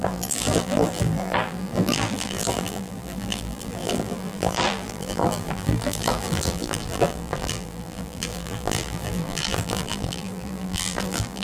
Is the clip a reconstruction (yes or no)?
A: yes